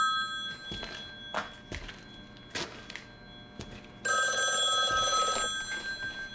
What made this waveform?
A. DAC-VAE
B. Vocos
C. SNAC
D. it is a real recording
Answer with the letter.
D